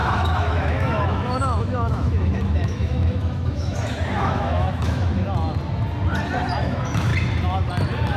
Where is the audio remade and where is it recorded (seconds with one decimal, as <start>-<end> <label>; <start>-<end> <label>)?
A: 0.0-5.1 remade; 5.1-6.6 recorded; 6.6-7.1 remade; 7.1-8.2 recorded